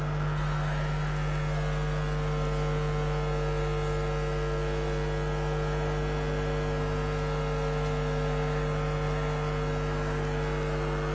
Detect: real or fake real